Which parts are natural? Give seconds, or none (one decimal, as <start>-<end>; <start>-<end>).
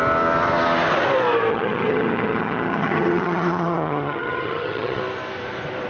0.0-1.5; 5.0-5.9